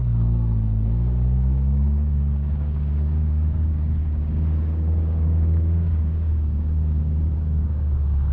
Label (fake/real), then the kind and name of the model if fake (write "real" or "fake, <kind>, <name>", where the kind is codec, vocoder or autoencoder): fake, codec, DAC